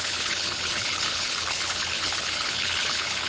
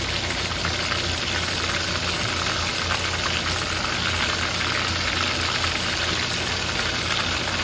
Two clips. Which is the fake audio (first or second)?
first